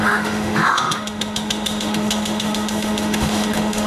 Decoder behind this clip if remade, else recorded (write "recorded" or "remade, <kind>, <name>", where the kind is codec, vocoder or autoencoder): remade, autoencoder, DAC-VAE